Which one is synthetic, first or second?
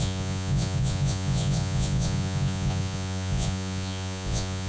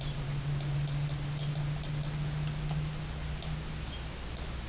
first